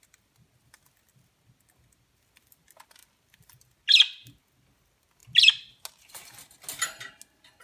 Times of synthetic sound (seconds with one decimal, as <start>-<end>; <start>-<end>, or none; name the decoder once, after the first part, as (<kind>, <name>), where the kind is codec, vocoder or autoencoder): none